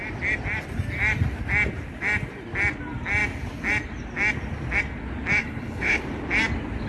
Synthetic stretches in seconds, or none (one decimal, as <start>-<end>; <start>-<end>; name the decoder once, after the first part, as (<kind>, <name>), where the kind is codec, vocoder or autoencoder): 5.4-6.0 (codec, HILCodec)